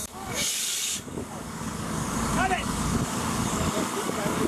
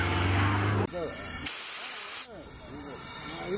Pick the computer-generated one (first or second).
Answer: first